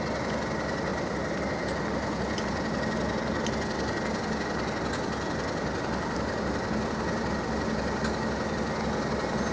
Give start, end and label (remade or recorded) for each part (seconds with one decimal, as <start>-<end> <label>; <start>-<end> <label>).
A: 0.0-9.5 recorded